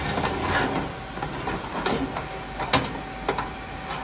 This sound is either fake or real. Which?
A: real